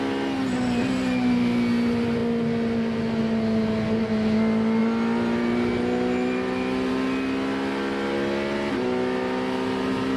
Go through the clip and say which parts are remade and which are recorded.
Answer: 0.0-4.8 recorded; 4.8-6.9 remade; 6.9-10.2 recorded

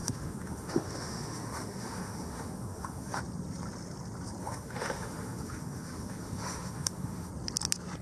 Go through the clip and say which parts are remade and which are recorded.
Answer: 0.0-3.2 remade; 3.2-4.4 recorded; 4.4-7.3 remade; 7.3-8.0 recorded

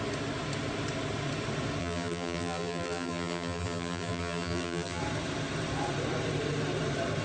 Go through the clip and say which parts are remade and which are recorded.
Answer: 0.0-1.8 recorded; 1.8-5.0 remade; 5.0-7.2 recorded

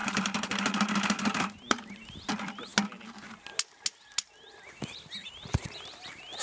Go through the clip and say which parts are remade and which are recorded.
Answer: 0.0-2.3 remade; 2.3-5.2 recorded; 5.2-5.7 remade; 5.7-6.4 recorded

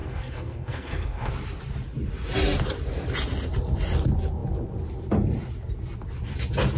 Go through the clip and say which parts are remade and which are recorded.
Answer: 0.0-1.3 remade; 1.3-6.8 recorded

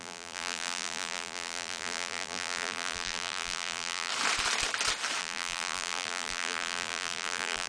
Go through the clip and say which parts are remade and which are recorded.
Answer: 0.0-4.1 remade; 4.1-5.2 recorded; 5.2-7.7 remade

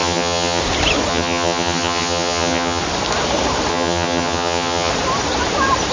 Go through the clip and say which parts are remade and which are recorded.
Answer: 0.0-0.6 remade; 0.6-1.1 recorded; 1.1-2.8 remade; 2.8-3.7 recorded; 3.7-4.9 remade; 4.9-5.9 recorded